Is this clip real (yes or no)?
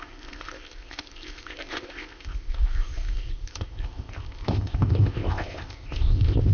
no